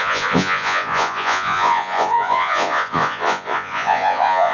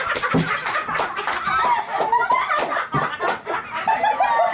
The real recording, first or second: second